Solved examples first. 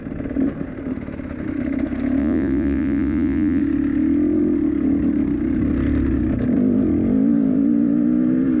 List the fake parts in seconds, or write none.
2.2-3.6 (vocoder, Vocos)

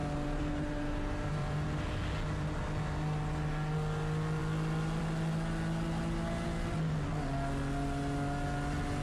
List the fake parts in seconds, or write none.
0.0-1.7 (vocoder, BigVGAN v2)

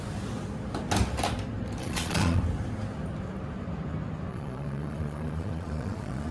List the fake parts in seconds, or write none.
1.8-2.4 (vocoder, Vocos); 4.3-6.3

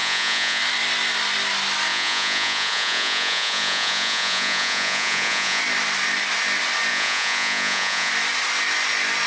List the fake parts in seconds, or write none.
0.0-0.6 (vocoder, Vocos); 1.9-5.6; 6.9-8.1